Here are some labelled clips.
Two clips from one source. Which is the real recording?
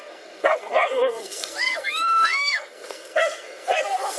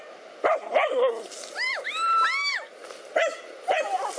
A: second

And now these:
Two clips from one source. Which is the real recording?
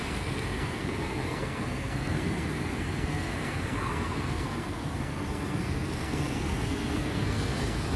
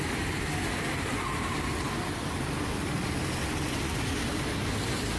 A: second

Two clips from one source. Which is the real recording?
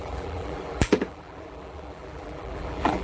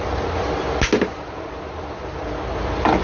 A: second